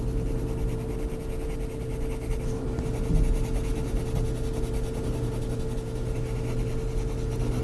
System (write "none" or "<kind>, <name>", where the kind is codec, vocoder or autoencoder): none